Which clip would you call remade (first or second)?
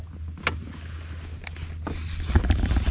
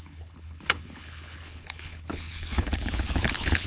second